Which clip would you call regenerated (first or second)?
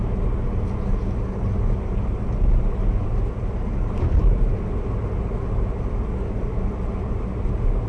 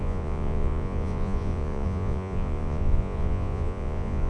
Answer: second